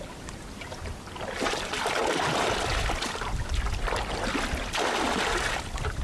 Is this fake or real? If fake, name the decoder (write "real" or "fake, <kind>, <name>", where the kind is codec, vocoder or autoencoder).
real